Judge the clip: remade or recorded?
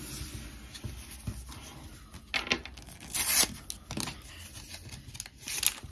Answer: recorded